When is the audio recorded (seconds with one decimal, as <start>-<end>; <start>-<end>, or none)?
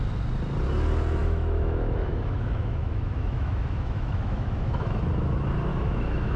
0.0-1.2; 5.0-5.7